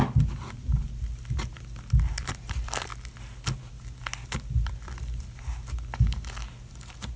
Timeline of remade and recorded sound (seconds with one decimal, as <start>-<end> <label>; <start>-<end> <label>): 0.0-7.2 recorded